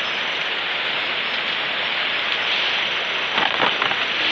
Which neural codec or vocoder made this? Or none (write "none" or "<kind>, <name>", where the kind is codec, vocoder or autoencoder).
none